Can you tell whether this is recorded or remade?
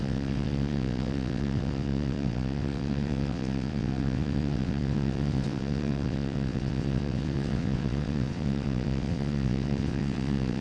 remade